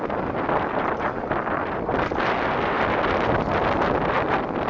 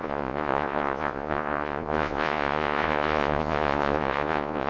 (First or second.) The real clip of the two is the first